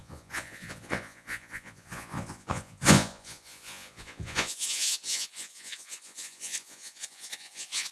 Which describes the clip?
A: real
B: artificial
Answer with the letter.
B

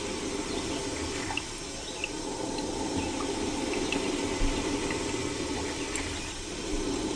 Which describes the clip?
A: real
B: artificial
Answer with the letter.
A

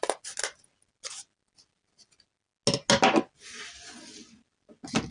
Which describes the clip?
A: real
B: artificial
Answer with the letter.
A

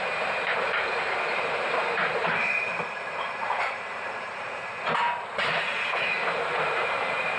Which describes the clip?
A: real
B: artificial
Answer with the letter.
B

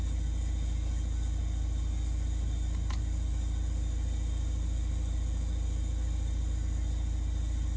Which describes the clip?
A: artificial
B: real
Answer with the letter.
B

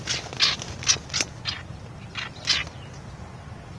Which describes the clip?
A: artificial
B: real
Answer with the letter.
B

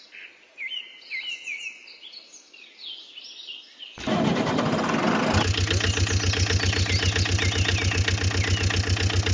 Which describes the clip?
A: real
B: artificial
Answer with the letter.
A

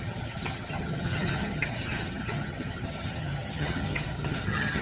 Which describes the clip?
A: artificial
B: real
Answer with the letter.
A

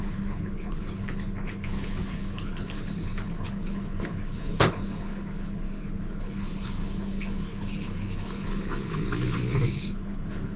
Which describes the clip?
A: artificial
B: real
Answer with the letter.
A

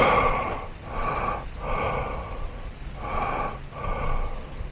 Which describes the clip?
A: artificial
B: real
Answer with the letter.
B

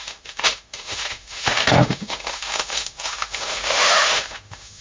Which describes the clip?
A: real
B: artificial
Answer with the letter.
B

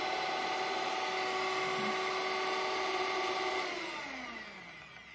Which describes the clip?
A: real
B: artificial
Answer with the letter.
A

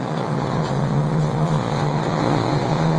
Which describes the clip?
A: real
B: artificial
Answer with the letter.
B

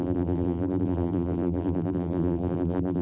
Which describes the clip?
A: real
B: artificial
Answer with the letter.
B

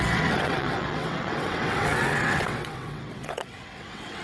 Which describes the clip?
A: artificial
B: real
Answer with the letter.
A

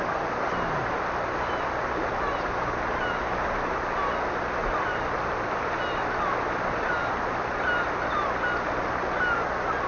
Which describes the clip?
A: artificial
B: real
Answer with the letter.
B